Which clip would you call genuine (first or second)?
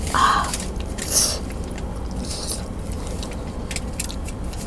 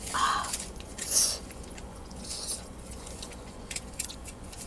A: first